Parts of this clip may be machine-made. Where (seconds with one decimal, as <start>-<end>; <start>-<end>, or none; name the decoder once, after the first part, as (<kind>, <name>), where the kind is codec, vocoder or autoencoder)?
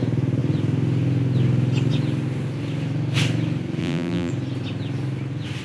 3.8-4.3 (vocoder, BigVGAN v2)